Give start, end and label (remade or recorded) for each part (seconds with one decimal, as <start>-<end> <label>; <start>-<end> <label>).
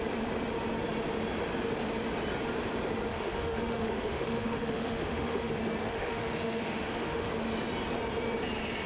0.0-3.1 recorded; 3.1-5.5 remade; 5.5-5.9 recorded; 5.9-7.3 remade; 7.3-8.9 recorded